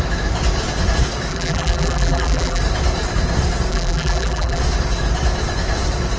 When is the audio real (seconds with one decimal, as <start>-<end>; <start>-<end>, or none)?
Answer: 0.0-1.3; 2.6-3.7; 4.6-6.2